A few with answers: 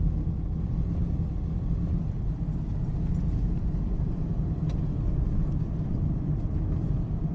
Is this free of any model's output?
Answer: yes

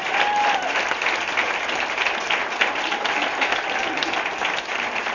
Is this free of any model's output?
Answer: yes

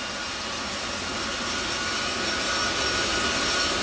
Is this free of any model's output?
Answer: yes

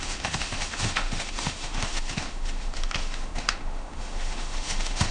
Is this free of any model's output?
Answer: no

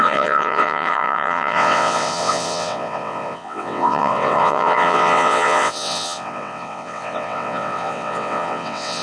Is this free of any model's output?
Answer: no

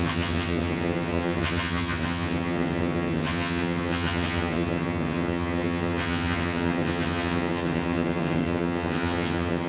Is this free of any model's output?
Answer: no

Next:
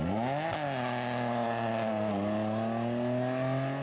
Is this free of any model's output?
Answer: yes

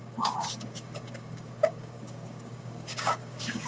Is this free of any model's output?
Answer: no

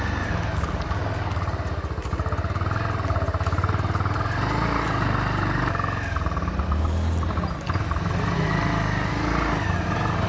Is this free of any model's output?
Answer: yes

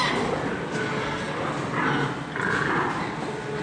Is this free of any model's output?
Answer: yes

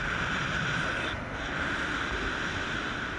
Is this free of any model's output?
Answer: yes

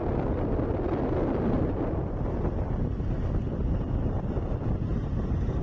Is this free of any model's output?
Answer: yes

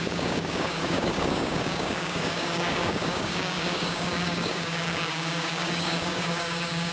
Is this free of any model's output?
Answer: no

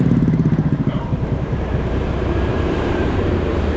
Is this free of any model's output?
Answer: no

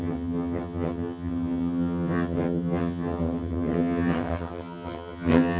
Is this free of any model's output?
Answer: no